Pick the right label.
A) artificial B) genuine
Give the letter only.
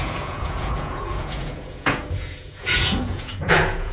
A